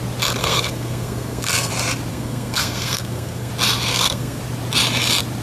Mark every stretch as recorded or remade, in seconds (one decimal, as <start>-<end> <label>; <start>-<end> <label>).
0.0-0.4 recorded; 0.4-1.7 remade; 1.7-2.1 recorded; 2.1-3.5 remade; 3.5-3.9 recorded; 3.9-4.4 remade; 4.4-5.4 recorded